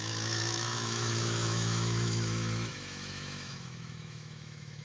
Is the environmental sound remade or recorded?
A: remade